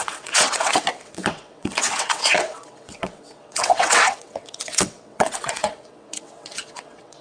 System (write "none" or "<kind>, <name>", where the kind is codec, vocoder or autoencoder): vocoder, WaveNeXt